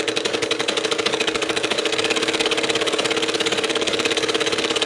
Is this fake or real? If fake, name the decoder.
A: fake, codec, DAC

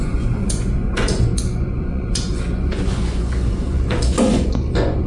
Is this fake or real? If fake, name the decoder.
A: fake, vocoder, Vocos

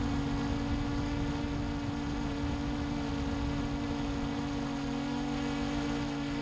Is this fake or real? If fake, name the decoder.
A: real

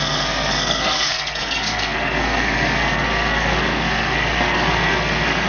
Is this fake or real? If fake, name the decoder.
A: fake, codec, SNAC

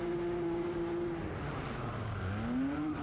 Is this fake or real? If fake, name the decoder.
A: real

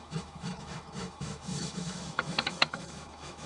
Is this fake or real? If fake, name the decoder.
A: fake, autoencoder, DAC-VAE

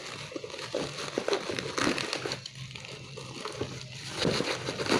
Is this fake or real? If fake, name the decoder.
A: real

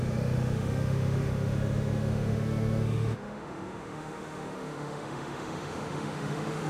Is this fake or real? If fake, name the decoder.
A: fake, autoencoder, DAC-VAE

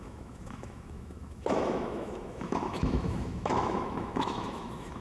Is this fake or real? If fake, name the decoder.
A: fake, autoencoder, DAC-VAE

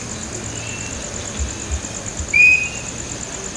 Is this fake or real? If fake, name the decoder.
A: real